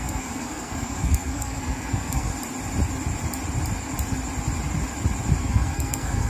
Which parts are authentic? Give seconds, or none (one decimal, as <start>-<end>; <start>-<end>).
2.3-5.4